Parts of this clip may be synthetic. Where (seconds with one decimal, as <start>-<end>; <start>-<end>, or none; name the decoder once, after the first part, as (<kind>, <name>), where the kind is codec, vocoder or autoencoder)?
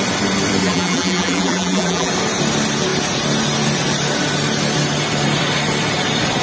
0.6-2.1 (vocoder, BigVGAN v2)